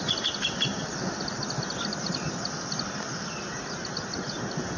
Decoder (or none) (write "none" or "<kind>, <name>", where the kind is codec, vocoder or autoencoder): none